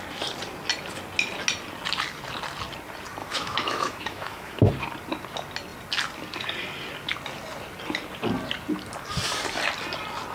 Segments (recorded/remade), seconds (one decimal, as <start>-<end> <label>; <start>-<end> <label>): 0.0-3.2 recorded; 3.2-4.7 remade; 4.7-10.3 recorded